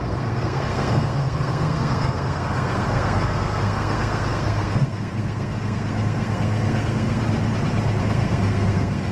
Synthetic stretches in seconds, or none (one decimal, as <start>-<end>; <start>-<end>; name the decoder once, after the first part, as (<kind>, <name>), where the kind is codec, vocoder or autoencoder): 0.0-7.2 (codec, SNAC); 8.0-9.1